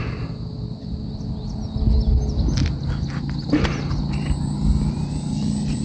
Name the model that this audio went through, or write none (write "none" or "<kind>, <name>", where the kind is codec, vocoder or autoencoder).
none